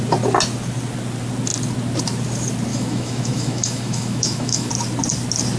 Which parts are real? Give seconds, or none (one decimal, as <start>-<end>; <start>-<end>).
0.0-2.7; 4.7-5.6